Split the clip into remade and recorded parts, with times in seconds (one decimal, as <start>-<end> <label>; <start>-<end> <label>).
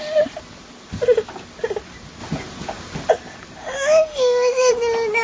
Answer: 0.0-3.6 recorded; 3.6-4.7 remade; 4.7-5.2 recorded